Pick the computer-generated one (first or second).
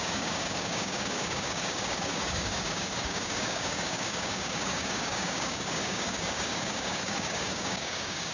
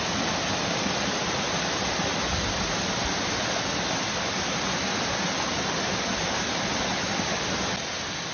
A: first